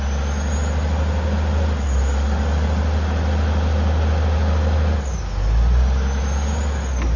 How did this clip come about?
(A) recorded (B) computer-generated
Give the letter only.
A